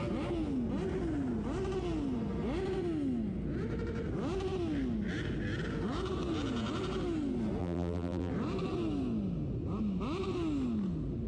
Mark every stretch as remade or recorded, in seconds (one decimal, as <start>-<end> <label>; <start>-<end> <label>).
0.0-7.6 recorded; 7.6-8.3 remade; 8.3-11.3 recorded

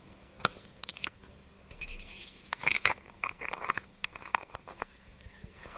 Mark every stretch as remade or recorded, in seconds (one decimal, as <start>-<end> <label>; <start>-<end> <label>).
0.0-5.8 remade

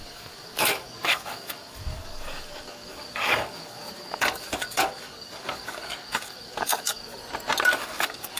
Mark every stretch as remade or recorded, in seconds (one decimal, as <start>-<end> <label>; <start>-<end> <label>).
0.0-7.2 remade; 7.2-7.7 recorded; 7.7-8.4 remade